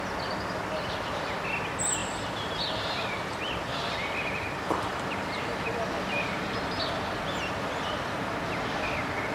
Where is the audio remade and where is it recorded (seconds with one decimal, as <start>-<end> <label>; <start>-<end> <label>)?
0.0-2.0 recorded; 2.0-6.8 remade; 6.8-9.3 recorded